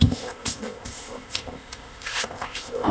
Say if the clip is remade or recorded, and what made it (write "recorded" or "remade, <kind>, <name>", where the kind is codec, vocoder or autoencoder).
remade, codec, ZipCodec